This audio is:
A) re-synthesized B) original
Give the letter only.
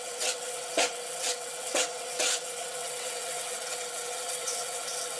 A